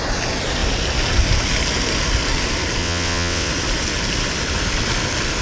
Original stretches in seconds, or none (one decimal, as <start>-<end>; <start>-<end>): 0.0-2.8; 3.5-5.4